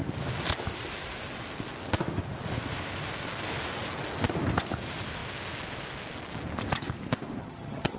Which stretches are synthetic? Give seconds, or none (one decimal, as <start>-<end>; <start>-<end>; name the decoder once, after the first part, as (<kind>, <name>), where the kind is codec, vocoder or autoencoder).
7.4-8.0 (vocoder, HiFi-GAN)